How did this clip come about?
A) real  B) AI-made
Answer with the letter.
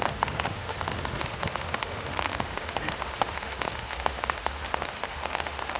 B